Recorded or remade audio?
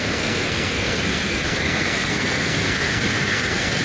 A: remade